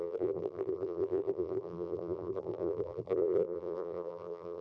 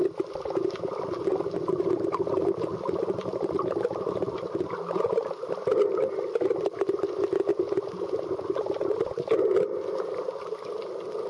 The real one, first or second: second